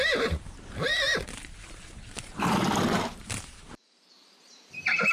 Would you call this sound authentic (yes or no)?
no